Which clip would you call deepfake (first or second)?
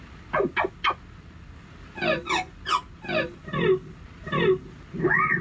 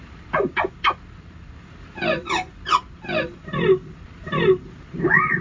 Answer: second